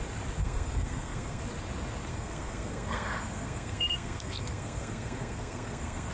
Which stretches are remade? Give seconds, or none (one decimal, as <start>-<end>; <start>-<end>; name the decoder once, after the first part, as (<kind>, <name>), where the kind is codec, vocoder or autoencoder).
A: 0.4-1.4 (codec, SNAC); 2.1-6.1